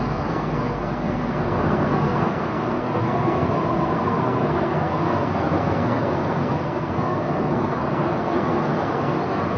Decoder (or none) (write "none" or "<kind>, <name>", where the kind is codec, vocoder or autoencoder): codec, SNAC